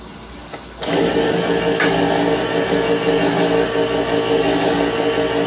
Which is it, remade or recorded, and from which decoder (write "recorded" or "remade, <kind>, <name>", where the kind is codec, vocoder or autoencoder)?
recorded